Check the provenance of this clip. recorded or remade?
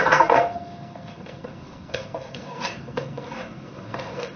remade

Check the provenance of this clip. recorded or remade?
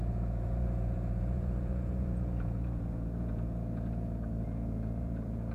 remade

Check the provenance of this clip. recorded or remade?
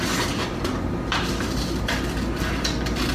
recorded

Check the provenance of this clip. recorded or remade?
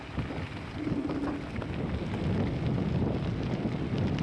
recorded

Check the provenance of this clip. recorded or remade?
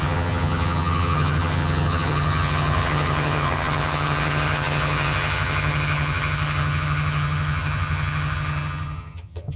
remade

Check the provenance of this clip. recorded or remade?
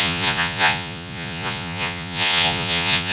remade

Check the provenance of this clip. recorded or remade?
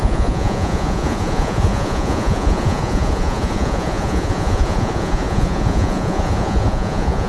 remade